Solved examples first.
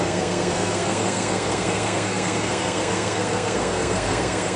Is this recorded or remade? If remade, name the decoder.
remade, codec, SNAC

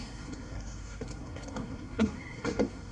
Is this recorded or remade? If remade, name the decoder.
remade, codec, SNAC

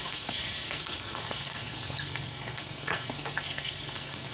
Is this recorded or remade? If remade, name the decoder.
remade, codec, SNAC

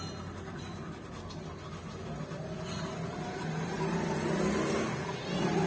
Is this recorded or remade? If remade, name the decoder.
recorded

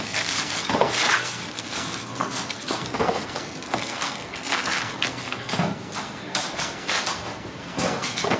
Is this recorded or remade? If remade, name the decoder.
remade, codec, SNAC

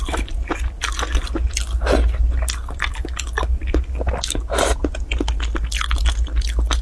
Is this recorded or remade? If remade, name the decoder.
recorded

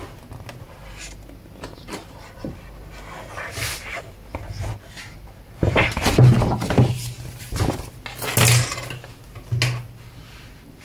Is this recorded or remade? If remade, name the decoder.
recorded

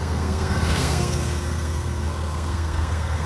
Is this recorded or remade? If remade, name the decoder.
remade, codec, SNAC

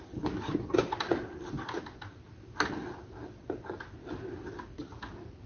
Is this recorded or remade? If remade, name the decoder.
recorded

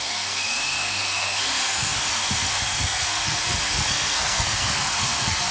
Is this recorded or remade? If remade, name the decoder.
remade, codec, SNAC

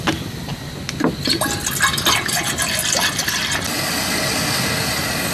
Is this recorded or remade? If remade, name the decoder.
recorded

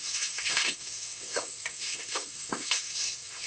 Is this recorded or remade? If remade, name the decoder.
remade, codec, SNAC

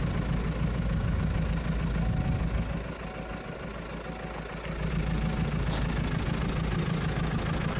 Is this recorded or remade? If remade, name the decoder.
recorded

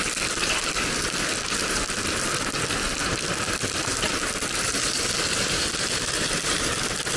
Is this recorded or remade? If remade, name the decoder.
recorded